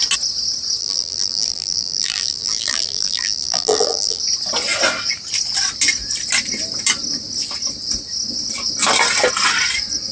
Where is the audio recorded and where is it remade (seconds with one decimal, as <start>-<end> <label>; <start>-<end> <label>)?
0.0-0.8 recorded; 0.8-4.2 remade; 4.2-10.1 recorded